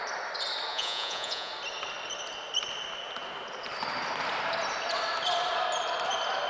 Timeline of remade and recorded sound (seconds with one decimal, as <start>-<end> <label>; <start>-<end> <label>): 0.0-0.7 recorded; 0.7-1.5 remade; 1.5-6.5 recorded